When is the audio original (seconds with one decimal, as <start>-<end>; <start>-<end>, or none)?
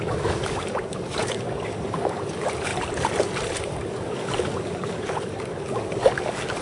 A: 2.7-3.6